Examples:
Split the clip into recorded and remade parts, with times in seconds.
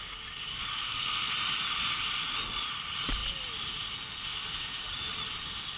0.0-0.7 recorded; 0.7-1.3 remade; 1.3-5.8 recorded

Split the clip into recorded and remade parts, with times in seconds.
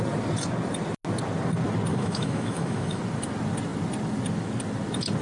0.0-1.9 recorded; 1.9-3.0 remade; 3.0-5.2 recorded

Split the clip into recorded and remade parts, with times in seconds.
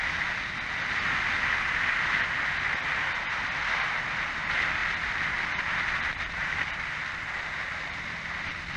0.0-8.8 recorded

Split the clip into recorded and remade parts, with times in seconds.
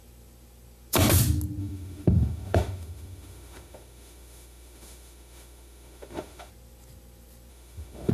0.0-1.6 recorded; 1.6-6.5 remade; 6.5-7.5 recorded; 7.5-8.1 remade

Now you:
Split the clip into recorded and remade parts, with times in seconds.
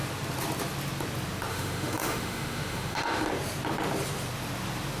0.0-1.5 recorded; 1.5-3.3 remade; 3.3-5.0 recorded